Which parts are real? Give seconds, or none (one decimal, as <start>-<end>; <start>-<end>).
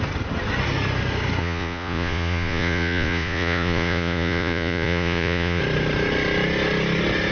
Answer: 0.0-1.4; 5.6-7.3